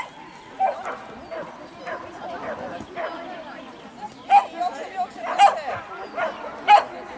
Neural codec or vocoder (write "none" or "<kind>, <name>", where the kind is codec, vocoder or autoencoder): none